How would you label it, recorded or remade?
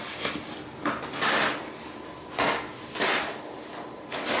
recorded